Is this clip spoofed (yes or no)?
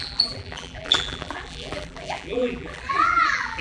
yes